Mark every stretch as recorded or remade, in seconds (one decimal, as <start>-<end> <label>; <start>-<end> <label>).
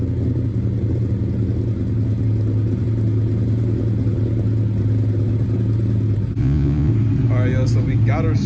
0.0-6.4 recorded; 6.4-6.9 remade; 6.9-8.5 recorded